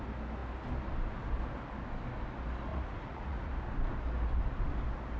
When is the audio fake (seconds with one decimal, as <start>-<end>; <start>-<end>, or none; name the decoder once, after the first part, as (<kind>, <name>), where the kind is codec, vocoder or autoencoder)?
2.7-3.5 (vocoder, Vocos)